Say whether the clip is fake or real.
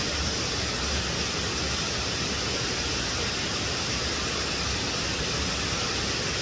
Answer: real